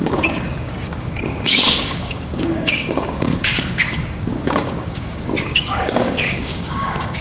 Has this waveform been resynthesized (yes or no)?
yes